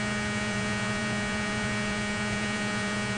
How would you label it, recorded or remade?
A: remade